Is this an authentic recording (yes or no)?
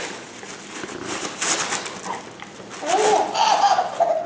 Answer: yes